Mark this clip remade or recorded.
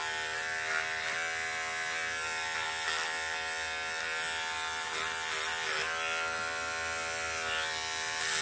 recorded